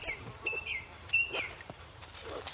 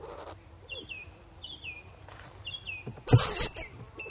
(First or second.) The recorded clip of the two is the second